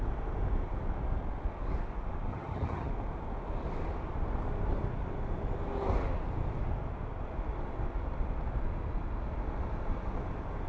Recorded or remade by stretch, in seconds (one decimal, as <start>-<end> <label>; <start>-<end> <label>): 0.0-2.3 recorded; 2.3-2.9 remade; 2.9-10.7 recorded